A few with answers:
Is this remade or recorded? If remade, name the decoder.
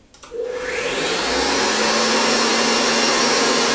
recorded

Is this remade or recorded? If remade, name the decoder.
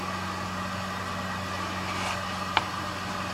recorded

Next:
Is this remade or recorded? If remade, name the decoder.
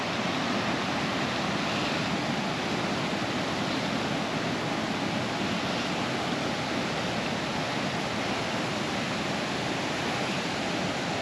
recorded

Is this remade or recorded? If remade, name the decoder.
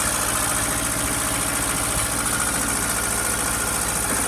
recorded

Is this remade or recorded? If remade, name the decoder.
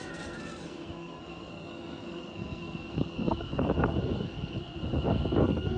remade, codec, SNAC